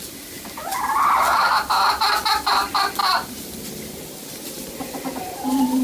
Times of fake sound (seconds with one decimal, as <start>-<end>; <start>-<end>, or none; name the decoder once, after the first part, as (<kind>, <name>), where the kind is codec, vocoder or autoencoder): 0.0-0.7 (vocoder, BigVGAN v2); 2.0-5.8